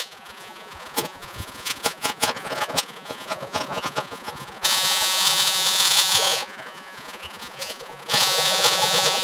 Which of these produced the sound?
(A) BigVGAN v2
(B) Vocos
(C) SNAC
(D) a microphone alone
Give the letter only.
B